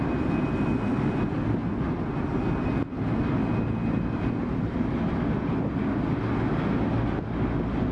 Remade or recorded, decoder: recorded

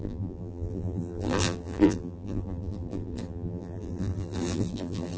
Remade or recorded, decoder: remade, vocoder, BigVGAN v2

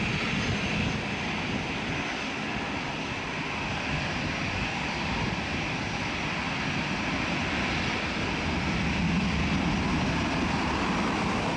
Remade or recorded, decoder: recorded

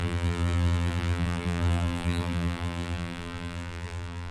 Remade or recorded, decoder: remade, vocoder, BigVGAN v2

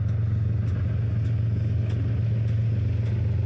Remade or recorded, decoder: recorded